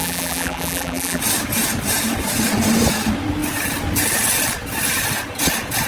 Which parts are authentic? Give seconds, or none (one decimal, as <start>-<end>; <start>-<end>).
1.2-5.9